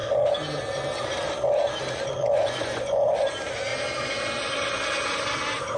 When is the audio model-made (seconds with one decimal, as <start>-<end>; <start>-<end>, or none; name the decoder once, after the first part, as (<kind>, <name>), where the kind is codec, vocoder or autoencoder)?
2.2-3.3 (vocoder, Vocos)